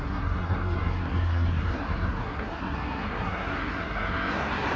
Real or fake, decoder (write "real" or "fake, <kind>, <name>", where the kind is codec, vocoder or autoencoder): fake, codec, SNAC